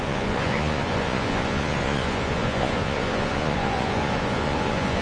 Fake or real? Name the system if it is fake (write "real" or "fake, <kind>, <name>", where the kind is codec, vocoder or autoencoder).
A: fake, vocoder, Vocos